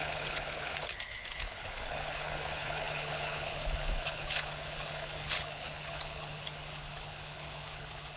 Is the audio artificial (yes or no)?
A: yes